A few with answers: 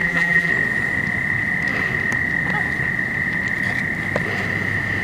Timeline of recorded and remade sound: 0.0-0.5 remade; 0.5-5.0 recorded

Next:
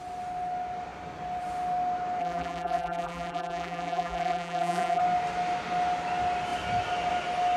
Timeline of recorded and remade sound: 0.0-2.2 recorded; 2.2-5.0 remade; 5.0-7.6 recorded